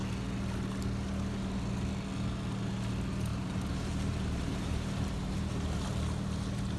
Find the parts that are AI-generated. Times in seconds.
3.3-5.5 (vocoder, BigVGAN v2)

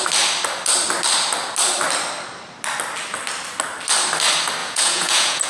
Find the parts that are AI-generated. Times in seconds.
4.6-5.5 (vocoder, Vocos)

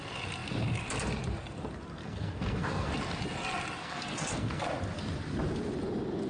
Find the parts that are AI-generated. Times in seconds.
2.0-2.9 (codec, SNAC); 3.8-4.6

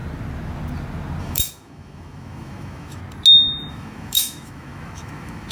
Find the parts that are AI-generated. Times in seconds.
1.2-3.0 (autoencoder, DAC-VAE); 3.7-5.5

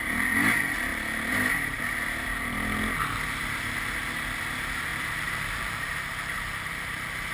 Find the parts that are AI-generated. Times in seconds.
0.9-1.8 (vocoder, BigVGAN v2); 4.9-7.3

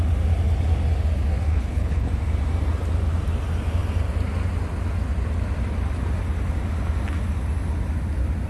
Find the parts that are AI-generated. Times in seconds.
1.5-2.1 (codec, HILCodec)

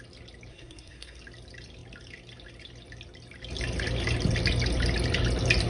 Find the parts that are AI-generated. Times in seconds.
0.5-1.2 (codec, SNAC)